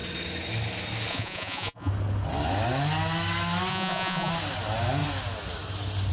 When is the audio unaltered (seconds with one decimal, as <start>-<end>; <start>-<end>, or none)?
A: 0.0-1.1; 1.9-3.7; 4.3-6.1